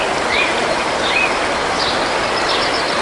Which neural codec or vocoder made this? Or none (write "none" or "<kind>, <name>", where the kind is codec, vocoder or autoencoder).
none